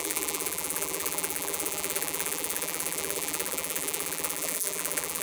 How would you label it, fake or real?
fake